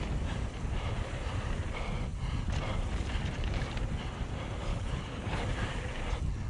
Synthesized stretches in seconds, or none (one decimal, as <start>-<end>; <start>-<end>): 4.7-5.4